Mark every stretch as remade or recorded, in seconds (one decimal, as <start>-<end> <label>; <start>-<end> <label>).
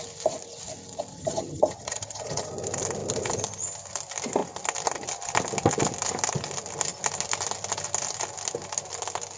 0.0-1.1 recorded; 1.1-2.5 remade; 2.5-9.4 recorded